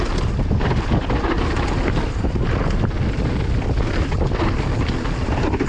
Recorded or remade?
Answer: recorded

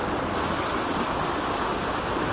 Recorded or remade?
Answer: recorded